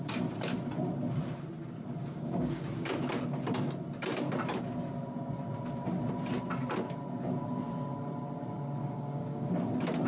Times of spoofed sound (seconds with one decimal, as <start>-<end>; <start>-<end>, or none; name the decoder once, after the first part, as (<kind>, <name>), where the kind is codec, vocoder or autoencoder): 2.0-2.6 (codec, DAC); 8.8-9.5